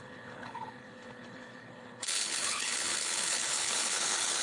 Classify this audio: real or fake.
fake